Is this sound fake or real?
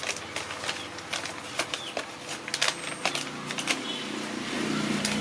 real